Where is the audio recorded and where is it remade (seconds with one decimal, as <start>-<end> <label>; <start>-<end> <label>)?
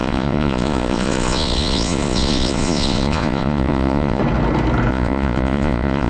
0.0-4.2 remade; 4.2-4.9 recorded; 4.9-6.1 remade